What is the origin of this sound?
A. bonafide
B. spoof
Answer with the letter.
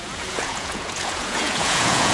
B